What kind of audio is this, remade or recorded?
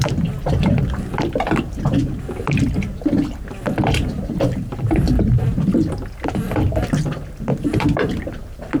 remade